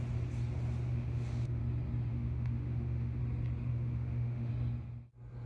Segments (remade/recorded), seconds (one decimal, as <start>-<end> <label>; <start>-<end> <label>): 0.0-0.9 recorded; 0.9-1.6 remade; 1.6-2.1 recorded; 2.1-3.2 remade; 3.2-3.7 recorded; 3.7-4.5 remade; 4.5-5.5 recorded